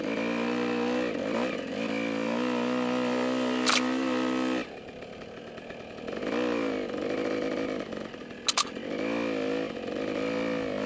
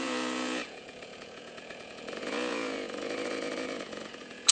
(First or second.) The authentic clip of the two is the first